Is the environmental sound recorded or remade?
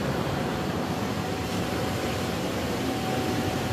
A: remade